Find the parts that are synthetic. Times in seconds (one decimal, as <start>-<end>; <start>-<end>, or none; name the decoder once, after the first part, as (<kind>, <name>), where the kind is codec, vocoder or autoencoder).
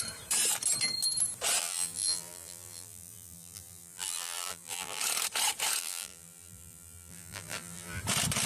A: 1.6-5.0 (vocoder, BigVGAN v2); 5.8-8.0